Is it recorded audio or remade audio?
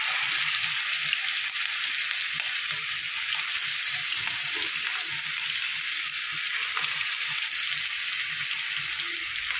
recorded